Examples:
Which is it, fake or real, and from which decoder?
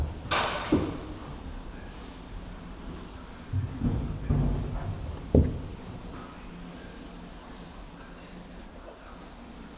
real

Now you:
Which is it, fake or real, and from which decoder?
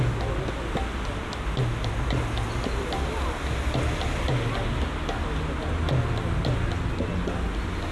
real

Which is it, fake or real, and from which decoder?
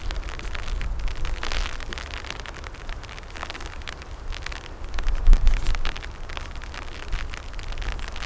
real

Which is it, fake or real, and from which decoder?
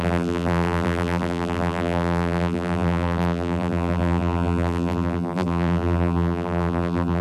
fake, vocoder, BigVGAN v2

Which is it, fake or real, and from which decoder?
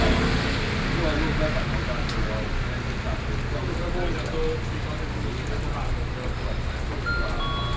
real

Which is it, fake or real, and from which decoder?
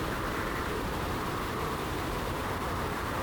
fake, vocoder, BigVGAN v2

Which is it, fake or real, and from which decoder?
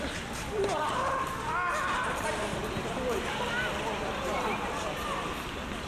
real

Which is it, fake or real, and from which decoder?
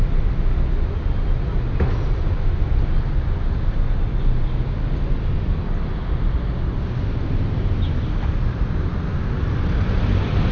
real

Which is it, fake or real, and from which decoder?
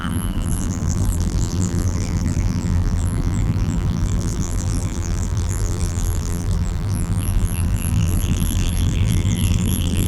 fake, vocoder, BigVGAN v2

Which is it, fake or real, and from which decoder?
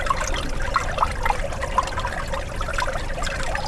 real